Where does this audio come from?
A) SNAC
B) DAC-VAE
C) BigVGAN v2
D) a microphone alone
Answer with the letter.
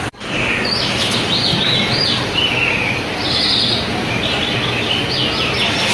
C